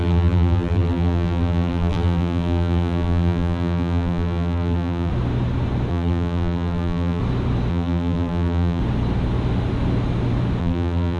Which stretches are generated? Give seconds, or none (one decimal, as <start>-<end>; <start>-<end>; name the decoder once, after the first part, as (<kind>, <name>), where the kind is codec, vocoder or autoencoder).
0.0-5.1 (vocoder, BigVGAN v2); 5.9-7.2; 7.7-8.8; 10.6-11.2